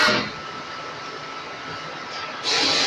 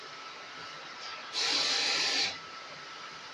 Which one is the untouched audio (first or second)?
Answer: first